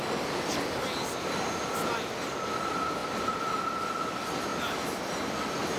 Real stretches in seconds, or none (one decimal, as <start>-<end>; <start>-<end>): 0.0-5.8